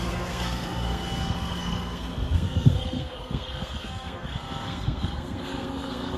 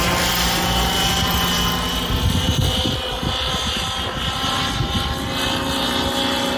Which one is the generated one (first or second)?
first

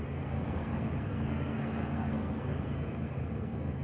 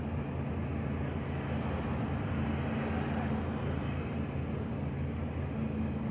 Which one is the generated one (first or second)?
first